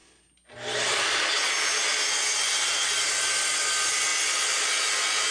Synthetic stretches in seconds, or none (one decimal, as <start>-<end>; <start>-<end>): none